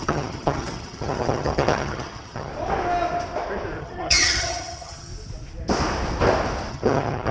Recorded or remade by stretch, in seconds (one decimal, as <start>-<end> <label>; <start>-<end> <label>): 0.0-2.5 remade; 2.5-3.8 recorded; 3.8-5.1 remade; 5.1-6.7 recorded; 6.7-7.3 remade